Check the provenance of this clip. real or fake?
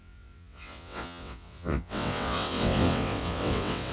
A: fake